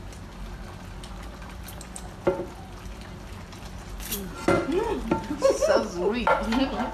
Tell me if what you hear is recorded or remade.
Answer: recorded